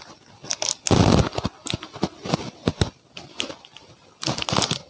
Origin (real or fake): real